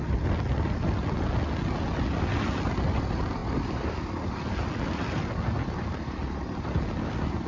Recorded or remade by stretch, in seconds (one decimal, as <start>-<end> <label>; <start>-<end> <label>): 0.0-7.5 recorded